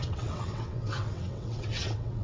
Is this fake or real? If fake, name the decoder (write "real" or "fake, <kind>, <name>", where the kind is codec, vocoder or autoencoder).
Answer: fake, vocoder, WaveNeXt